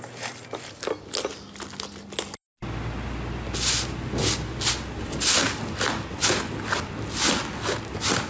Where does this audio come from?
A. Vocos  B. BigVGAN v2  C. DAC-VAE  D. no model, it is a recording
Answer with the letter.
D